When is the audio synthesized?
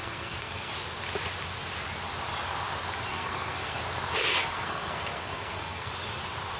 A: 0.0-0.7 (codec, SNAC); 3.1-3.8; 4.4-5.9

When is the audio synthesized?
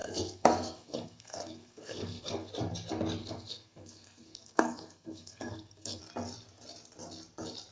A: 0.0-2.5 (codec, SNAC); 3.2-6.0